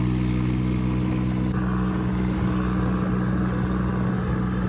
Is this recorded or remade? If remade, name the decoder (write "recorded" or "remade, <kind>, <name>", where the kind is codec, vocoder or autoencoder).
recorded